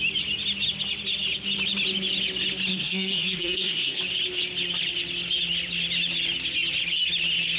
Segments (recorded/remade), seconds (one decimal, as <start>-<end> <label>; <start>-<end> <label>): 0.0-2.7 recorded; 2.7-4.0 remade; 4.0-7.6 recorded